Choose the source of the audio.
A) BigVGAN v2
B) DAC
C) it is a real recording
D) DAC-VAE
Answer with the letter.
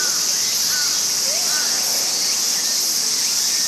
C